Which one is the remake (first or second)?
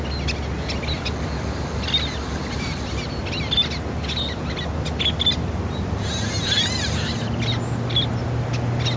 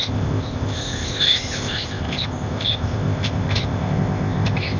second